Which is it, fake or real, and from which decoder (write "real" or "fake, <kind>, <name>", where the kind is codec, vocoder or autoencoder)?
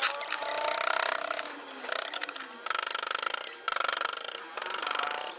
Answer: real